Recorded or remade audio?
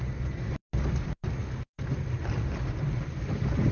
recorded